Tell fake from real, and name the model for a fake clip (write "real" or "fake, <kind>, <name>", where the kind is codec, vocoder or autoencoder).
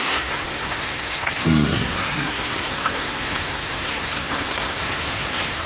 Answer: fake, codec, SNAC